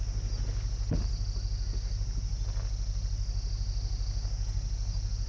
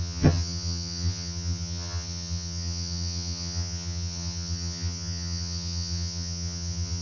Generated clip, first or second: second